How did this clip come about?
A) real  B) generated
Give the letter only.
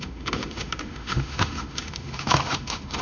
B